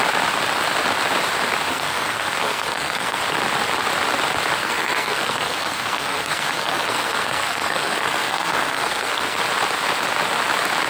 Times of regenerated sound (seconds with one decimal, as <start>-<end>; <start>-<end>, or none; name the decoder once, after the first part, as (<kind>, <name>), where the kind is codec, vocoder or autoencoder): 1.7-3.2 (codec, SNAC); 4.6-9.4